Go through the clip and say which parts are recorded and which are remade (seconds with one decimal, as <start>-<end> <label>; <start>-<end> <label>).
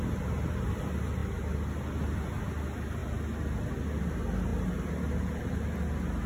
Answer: 0.0-6.3 recorded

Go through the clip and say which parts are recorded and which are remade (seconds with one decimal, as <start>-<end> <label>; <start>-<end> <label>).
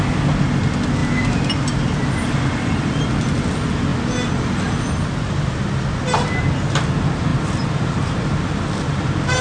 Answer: 0.0-1.0 recorded; 1.0-1.8 remade; 1.8-7.3 recorded; 7.3-8.1 remade; 8.1-9.4 recorded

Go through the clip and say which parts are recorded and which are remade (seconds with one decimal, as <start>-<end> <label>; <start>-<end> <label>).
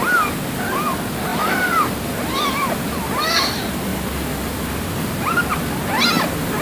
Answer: 0.0-1.3 recorded; 1.3-3.1 remade; 3.1-6.6 recorded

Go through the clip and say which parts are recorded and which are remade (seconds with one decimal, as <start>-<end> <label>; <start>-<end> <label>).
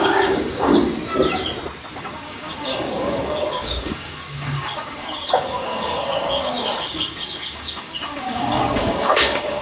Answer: 0.0-0.7 remade; 0.7-2.0 recorded; 2.0-9.6 remade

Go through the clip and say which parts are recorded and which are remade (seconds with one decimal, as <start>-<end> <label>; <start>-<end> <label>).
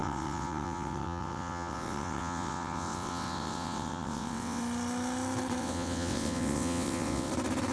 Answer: 0.0-4.6 remade; 4.6-5.6 recorded; 5.6-7.3 remade; 7.3-7.7 recorded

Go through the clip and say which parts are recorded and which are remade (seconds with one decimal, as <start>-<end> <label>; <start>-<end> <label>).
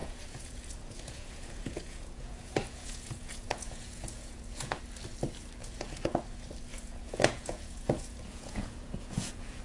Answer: 0.0-4.8 remade; 4.8-5.6 recorded; 5.6-6.2 remade; 6.2-6.7 recorded; 6.7-9.6 remade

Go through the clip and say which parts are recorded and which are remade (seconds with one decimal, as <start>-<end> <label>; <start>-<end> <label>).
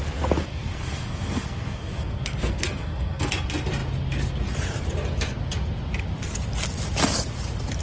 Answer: 0.0-0.5 recorded; 0.5-3.3 remade; 3.3-7.8 recorded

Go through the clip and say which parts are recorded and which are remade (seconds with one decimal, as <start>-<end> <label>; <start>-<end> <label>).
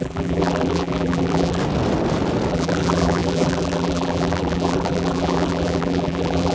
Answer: 0.0-1.6 remade; 1.6-2.5 recorded; 2.5-6.5 remade